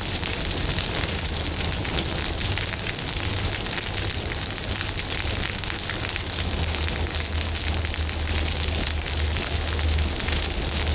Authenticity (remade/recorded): recorded